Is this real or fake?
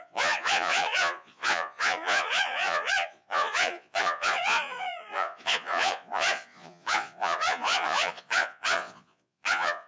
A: fake